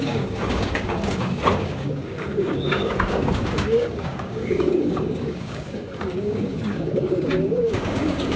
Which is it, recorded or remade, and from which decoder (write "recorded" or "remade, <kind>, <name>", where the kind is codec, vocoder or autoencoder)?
remade, codec, DAC